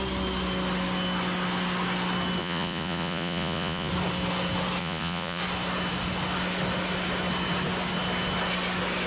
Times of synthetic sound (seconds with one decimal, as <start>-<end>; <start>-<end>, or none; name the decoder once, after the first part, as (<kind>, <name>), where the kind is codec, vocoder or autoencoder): 2.4-3.9 (vocoder, Vocos); 4.8-5.4